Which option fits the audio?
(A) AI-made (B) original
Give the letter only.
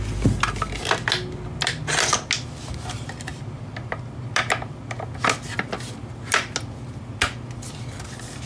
B